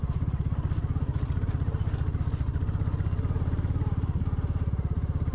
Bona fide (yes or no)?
yes